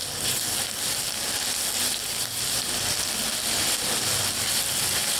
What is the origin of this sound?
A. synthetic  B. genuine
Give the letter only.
B